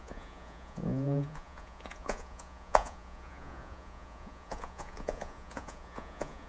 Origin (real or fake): fake